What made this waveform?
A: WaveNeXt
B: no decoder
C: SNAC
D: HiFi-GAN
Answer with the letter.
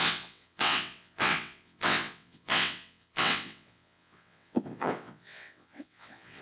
A